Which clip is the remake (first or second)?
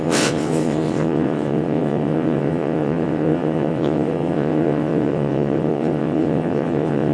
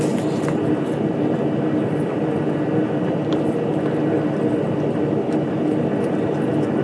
first